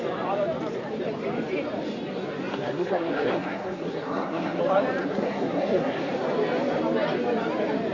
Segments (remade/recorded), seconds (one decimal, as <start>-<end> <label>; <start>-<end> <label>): 0.0-2.5 recorded; 2.5-4.6 remade; 4.6-5.0 recorded; 5.0-6.1 remade; 6.1-7.9 recorded